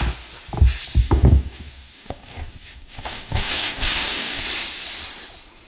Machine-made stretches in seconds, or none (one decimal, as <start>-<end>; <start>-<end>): 1.0-4.4